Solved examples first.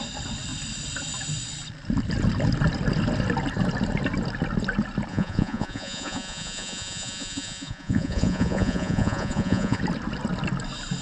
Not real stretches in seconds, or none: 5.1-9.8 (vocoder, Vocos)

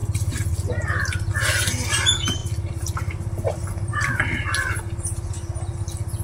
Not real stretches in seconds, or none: 0.0-1.3 (vocoder, BigVGAN v2); 2.4-4.8

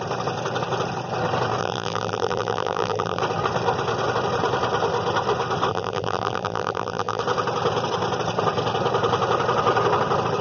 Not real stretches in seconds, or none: 1.6-3.2 (vocoder, BigVGAN v2); 5.7-7.2

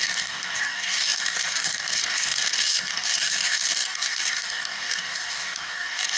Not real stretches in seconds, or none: 0.0-6.2 (codec, DAC)